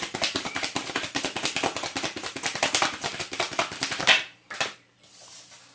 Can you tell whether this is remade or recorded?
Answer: remade